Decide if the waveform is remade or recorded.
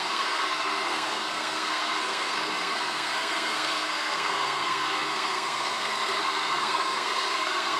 remade